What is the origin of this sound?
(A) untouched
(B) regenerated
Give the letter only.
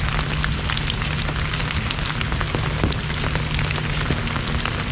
A